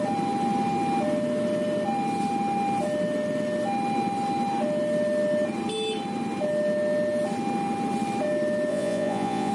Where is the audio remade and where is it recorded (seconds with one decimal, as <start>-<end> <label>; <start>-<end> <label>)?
0.0-8.7 recorded; 8.7-9.5 remade